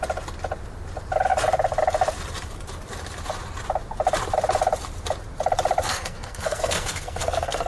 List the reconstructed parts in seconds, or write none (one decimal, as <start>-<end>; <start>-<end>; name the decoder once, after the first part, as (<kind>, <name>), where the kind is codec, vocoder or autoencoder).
5.9-7.7 (codec, SNAC)